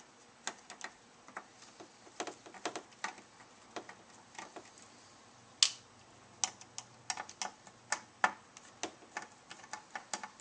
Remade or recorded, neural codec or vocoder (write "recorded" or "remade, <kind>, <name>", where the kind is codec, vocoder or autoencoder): recorded